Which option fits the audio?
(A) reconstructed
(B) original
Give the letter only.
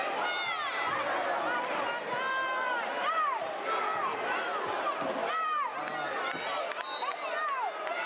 B